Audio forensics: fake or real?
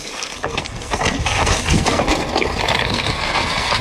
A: fake